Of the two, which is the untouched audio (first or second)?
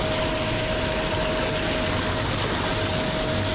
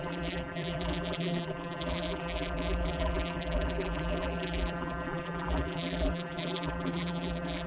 first